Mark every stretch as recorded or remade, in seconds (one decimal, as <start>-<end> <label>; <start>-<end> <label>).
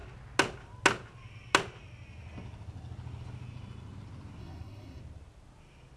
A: 0.0-4.4 recorded; 4.4-5.0 remade; 5.0-6.0 recorded